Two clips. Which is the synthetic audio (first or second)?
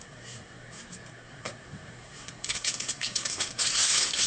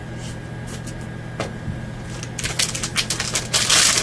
first